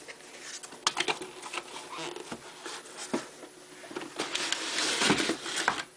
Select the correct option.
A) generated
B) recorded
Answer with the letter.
B